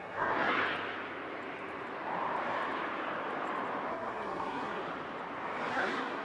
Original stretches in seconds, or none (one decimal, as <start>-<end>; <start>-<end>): 0.6-3.9; 4.8-5.7